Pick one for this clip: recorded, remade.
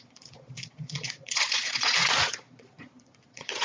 remade